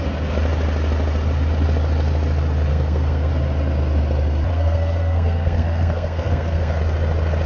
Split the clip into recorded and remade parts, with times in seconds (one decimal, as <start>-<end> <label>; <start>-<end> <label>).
0.0-2.7 recorded; 2.7-3.3 remade; 3.3-4.5 recorded; 4.5-6.8 remade; 6.8-7.5 recorded